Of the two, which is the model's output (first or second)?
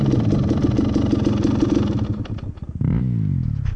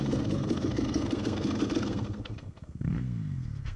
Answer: second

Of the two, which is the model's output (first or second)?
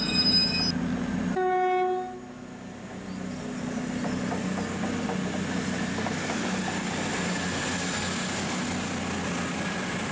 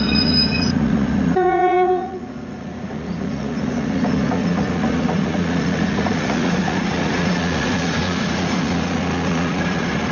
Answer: second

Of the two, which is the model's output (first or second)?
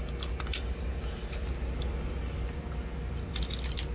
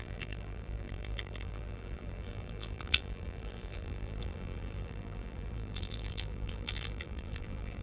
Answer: second